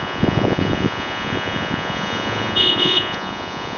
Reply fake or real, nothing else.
fake